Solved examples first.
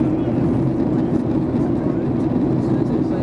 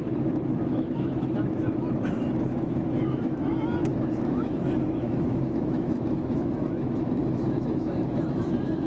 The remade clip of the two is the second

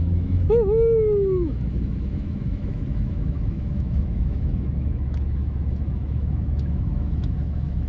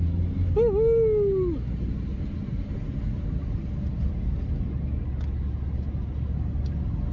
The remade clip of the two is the first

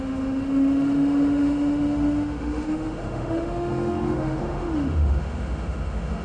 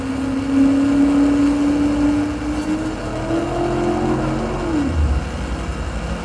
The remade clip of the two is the first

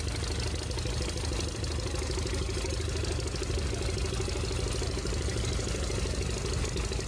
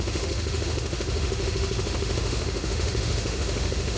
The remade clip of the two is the second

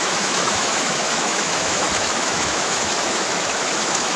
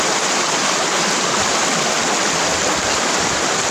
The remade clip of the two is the first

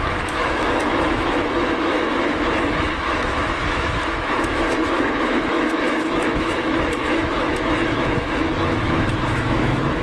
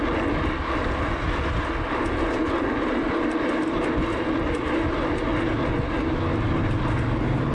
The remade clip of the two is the first